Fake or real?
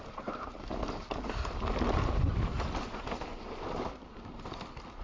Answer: real